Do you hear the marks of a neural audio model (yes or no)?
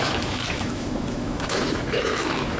yes